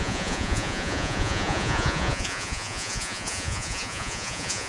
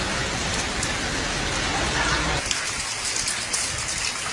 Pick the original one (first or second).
second